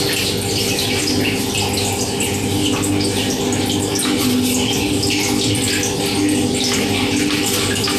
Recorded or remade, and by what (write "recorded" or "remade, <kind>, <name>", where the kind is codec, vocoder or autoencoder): recorded